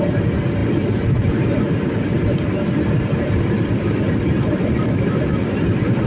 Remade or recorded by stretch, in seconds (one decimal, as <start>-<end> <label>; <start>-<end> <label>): 0.0-0.6 recorded; 0.6-1.6 remade; 1.6-2.1 recorded; 2.1-6.1 remade